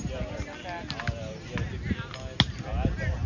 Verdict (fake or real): real